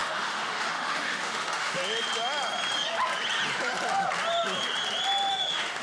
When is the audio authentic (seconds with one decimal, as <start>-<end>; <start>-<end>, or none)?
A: 1.8-5.3